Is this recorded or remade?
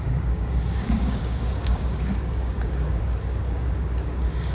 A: remade